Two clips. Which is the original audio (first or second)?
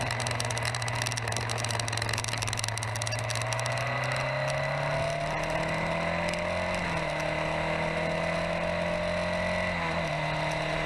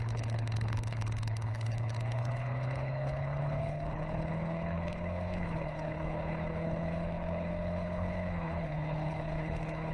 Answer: first